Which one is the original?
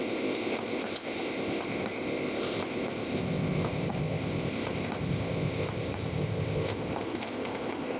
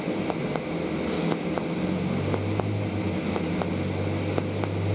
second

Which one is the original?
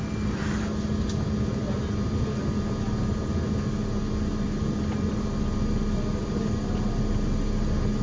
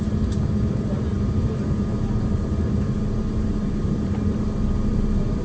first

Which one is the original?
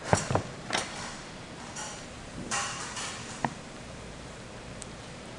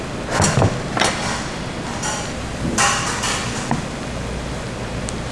second